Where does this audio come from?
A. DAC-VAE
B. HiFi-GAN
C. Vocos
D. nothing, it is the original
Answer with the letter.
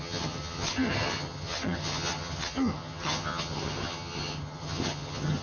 B